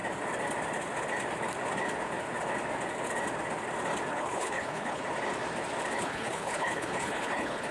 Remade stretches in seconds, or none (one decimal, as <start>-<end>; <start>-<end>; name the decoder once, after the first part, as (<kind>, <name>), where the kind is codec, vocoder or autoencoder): 4.1-5.0 (codec, HILCodec); 6.0-7.7